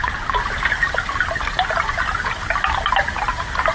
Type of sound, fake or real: real